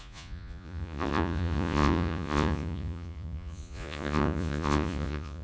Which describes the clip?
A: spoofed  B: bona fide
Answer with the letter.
A